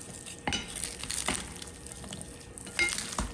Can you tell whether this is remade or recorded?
recorded